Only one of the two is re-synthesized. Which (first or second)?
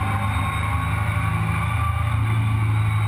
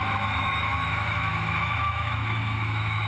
second